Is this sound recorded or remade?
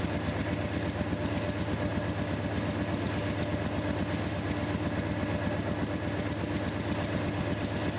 recorded